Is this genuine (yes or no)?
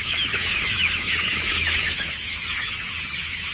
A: no